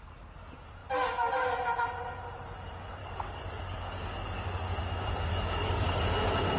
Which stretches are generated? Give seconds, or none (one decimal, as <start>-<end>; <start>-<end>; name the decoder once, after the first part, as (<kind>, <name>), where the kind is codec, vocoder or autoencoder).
3.0-4.8 (codec, DAC); 5.3-6.0